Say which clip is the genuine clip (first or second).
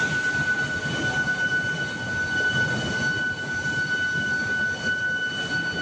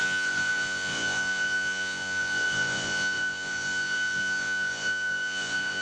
first